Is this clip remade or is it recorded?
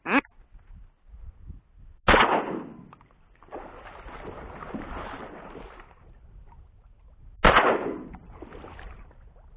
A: recorded